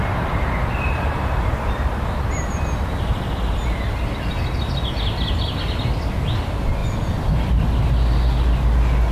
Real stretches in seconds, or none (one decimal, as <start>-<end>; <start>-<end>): 0.0-9.1